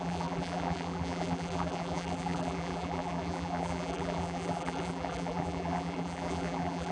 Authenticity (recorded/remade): remade